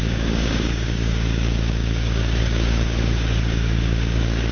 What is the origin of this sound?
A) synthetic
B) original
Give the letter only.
A